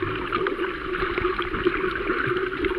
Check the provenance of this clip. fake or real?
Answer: real